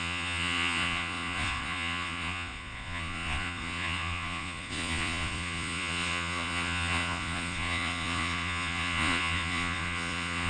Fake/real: fake